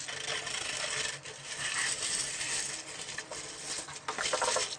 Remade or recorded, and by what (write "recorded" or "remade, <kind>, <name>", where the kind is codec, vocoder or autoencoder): recorded